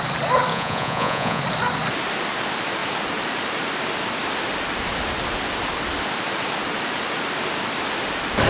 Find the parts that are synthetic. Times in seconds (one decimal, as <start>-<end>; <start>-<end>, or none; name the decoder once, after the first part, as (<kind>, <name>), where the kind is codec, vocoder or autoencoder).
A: 0.5-1.4 (vocoder, Vocos)